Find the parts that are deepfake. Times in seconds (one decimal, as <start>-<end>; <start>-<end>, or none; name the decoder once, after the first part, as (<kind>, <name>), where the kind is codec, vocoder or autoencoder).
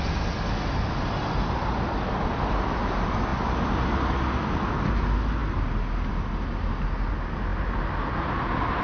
none